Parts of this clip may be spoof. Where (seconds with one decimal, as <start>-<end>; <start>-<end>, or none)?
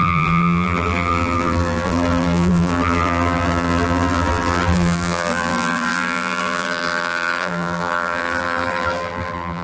0.0-9.6